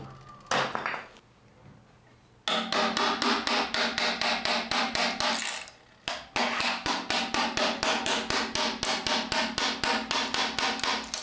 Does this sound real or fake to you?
real